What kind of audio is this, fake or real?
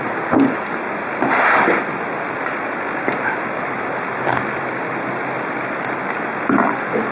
real